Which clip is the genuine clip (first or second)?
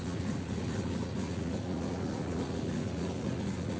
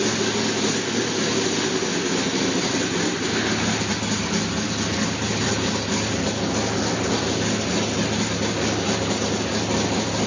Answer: second